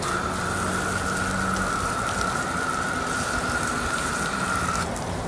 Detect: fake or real real